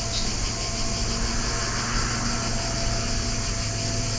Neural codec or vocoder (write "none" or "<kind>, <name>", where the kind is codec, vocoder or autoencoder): none